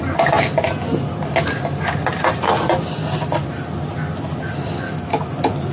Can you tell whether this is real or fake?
real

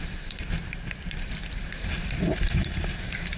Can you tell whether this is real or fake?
real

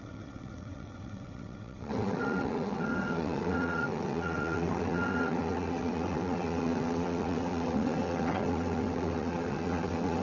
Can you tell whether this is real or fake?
fake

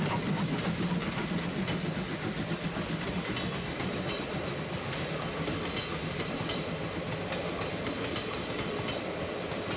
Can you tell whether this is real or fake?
real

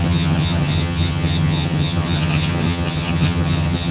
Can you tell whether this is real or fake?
fake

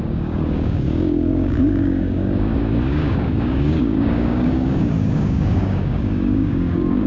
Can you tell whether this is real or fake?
fake